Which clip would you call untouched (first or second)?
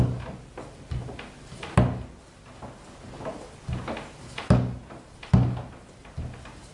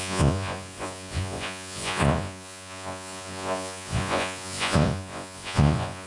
first